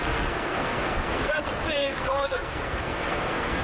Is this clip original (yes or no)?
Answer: no